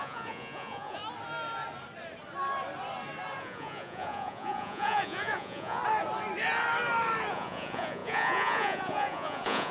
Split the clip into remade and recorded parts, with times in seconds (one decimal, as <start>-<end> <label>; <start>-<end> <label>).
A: 0.0-1.0 remade; 1.0-3.4 recorded; 3.4-5.8 remade; 5.8-7.3 recorded; 7.3-9.7 remade